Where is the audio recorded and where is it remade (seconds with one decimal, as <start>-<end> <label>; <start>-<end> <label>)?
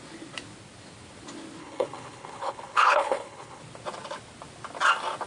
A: 0.0-1.6 recorded; 1.6-3.6 remade; 3.6-5.3 recorded